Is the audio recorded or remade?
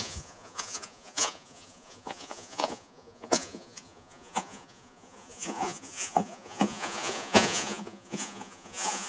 remade